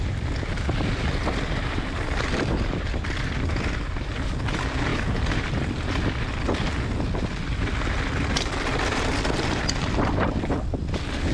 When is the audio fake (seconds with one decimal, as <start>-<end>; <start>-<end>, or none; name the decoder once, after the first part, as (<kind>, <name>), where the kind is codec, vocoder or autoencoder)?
0.0-11.3 (vocoder, BigVGAN v2)